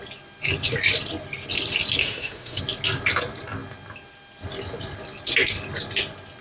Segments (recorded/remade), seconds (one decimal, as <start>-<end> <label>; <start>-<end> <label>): 0.0-2.0 recorded; 2.0-2.6 remade; 2.6-6.4 recorded